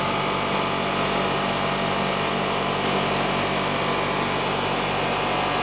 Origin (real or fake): real